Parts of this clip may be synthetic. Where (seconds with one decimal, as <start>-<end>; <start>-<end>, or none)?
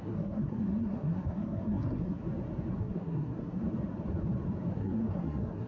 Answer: 0.0-2.2; 2.8-3.6; 4.7-5.7